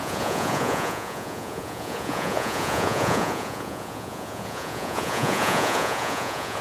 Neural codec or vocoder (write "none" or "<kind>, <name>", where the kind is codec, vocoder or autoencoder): vocoder, Vocos